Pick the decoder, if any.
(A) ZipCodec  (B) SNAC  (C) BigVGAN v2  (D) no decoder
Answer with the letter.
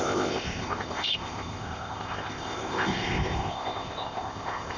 A